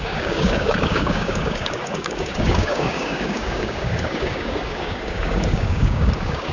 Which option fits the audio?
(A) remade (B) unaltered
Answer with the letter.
A